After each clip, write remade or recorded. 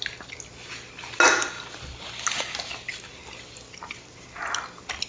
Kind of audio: recorded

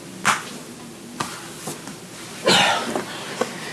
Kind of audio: recorded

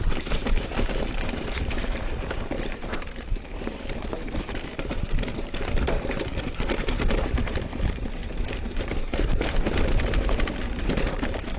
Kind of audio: remade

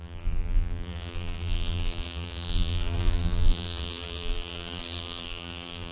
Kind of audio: remade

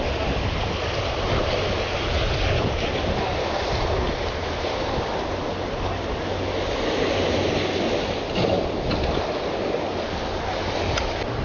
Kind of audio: recorded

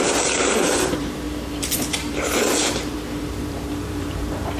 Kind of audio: remade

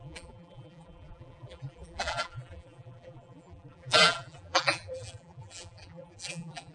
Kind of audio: remade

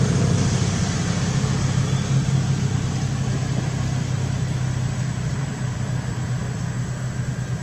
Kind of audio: recorded